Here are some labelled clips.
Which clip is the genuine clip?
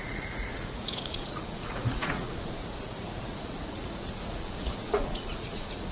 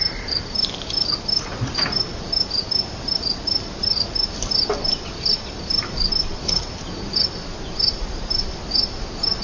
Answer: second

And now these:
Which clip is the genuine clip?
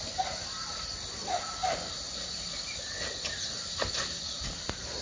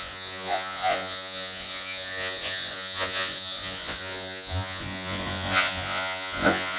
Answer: first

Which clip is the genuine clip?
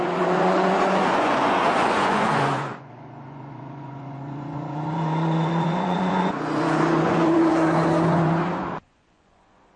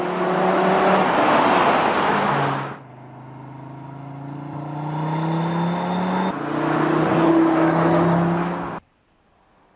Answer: second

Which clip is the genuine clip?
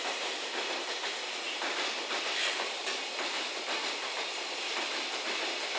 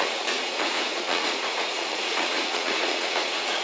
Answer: first